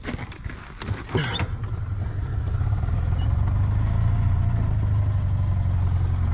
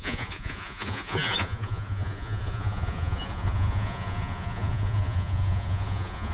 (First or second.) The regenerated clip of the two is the second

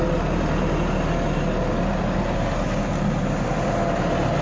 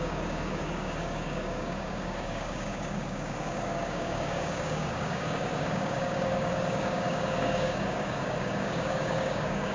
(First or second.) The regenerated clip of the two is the second